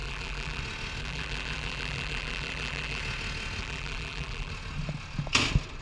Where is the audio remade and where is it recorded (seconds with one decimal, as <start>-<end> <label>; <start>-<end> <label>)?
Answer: 0.0-0.6 remade; 0.6-1.0 recorded; 1.0-3.0 remade; 3.0-3.6 recorded; 3.6-4.5 remade; 4.5-5.8 recorded